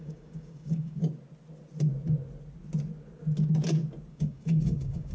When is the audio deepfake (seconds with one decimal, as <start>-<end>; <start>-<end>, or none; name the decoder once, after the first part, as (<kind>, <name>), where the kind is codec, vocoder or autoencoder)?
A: 0.0-1.0 (codec, DAC); 4.1-5.1